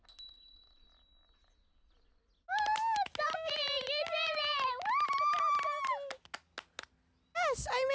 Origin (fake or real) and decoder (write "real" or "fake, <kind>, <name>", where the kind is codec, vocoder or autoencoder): real